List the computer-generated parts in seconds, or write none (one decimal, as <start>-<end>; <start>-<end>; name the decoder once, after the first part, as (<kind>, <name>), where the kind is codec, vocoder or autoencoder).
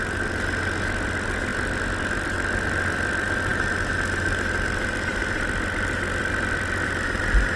none